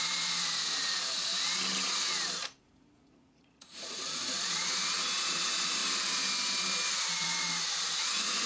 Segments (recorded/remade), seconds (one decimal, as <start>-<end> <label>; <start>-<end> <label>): 0.0-1.3 remade; 1.3-2.6 recorded; 2.6-5.8 remade; 5.8-6.9 recorded; 6.9-8.5 remade